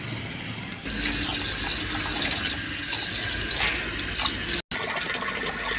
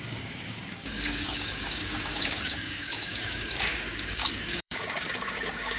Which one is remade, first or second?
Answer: second